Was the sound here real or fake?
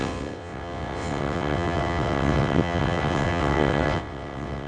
fake